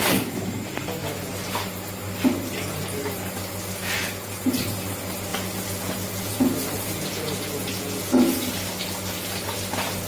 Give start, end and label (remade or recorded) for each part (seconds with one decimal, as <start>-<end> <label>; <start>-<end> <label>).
0.0-4.0 recorded; 4.0-4.6 remade; 4.6-5.3 recorded; 5.3-8.5 remade; 8.5-10.1 recorded